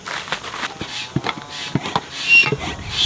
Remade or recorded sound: recorded